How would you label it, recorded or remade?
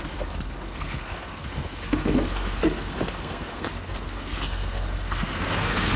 remade